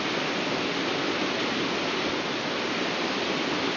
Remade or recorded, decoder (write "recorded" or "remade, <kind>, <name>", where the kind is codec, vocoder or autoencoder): recorded